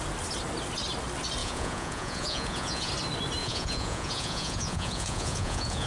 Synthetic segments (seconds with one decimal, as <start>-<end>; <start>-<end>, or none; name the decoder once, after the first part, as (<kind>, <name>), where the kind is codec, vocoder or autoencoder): 1.4-2.9 (vocoder, Vocos); 3.4-5.9